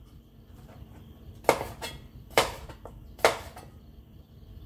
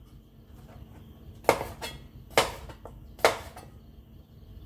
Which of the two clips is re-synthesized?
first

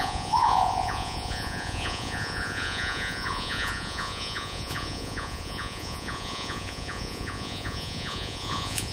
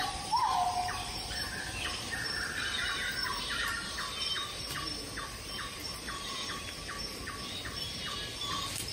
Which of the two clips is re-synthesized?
first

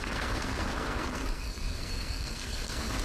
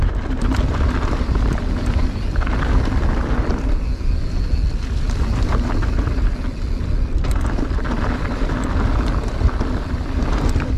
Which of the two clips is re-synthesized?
first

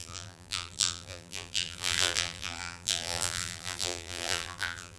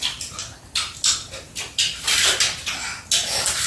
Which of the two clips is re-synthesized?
first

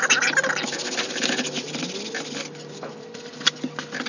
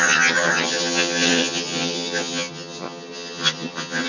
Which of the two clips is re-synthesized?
second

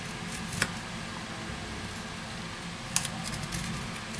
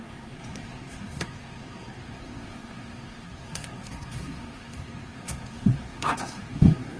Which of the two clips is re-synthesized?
second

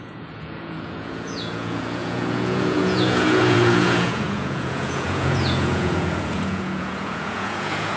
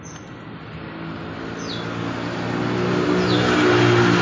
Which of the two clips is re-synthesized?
first